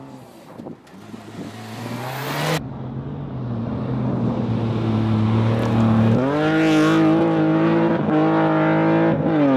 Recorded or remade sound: recorded